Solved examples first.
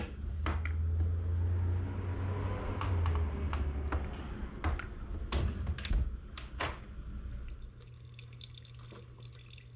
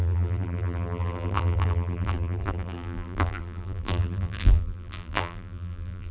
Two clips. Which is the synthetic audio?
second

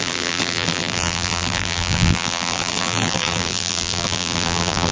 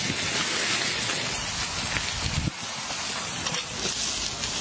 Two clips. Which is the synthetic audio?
first